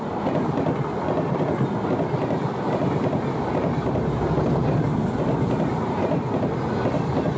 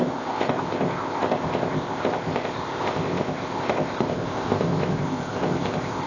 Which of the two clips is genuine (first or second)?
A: first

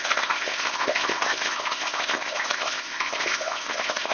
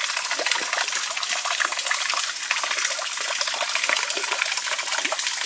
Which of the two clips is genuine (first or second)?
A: second